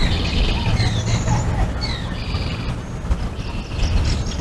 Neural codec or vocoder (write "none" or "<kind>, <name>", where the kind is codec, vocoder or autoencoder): none